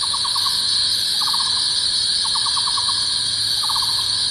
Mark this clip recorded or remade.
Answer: recorded